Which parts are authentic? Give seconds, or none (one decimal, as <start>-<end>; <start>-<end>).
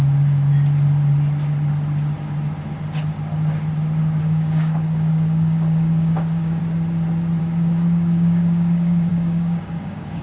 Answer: 0.0-4.2; 6.6-7.4